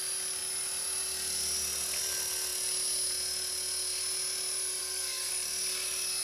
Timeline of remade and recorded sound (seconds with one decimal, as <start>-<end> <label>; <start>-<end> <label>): 0.0-4.8 recorded; 4.8-5.3 remade; 5.3-6.2 recorded